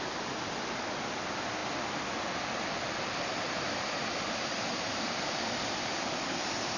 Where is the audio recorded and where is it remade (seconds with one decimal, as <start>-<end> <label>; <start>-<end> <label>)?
0.0-6.8 recorded